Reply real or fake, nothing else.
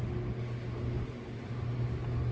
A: real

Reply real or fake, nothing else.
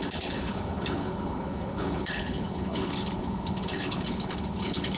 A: fake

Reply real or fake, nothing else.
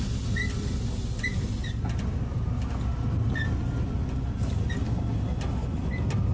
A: real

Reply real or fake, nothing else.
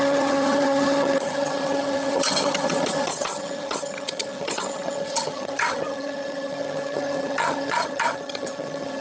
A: fake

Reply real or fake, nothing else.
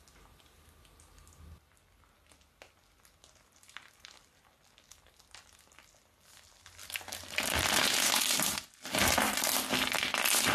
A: real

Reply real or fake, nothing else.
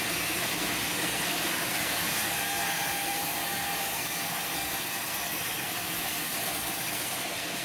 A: fake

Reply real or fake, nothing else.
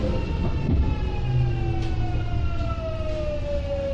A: real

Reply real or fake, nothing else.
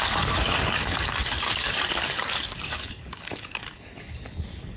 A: fake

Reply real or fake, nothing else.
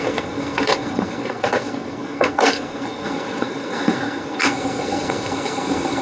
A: fake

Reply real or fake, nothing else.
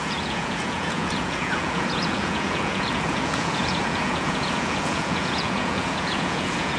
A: fake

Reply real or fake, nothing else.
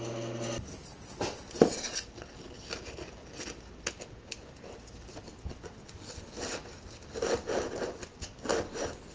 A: real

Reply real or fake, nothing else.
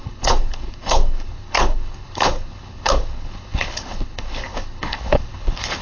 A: fake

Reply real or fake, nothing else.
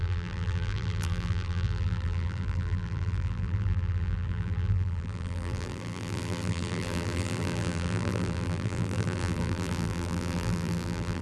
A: fake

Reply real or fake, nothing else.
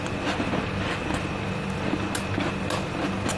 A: real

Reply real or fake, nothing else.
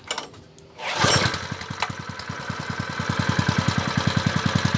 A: real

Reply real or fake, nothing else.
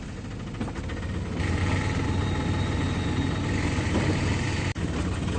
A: real